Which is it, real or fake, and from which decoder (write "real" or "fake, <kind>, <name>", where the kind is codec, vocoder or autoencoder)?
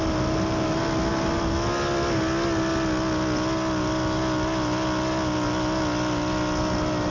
real